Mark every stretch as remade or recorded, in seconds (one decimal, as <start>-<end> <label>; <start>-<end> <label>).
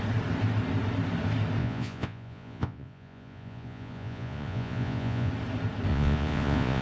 0.0-1.6 recorded; 1.6-5.3 remade; 5.3-5.9 recorded; 5.9-6.8 remade